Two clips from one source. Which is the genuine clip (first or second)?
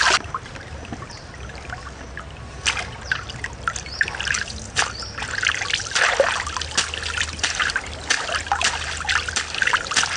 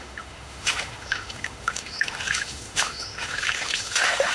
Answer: first